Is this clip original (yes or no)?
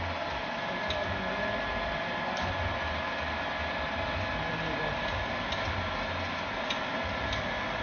yes